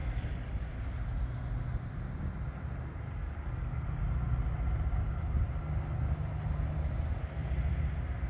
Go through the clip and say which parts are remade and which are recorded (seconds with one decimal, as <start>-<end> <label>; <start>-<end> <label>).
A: 0.0-0.7 remade; 0.7-3.2 recorded; 3.2-4.0 remade; 4.0-8.3 recorded

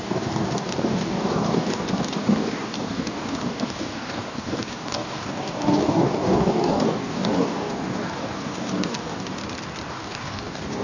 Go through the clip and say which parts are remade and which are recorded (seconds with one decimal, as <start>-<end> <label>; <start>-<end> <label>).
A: 0.0-9.4 remade; 9.4-9.9 recorded; 9.9-10.8 remade